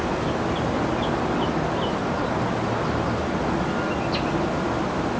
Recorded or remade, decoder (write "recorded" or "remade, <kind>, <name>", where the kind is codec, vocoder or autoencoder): recorded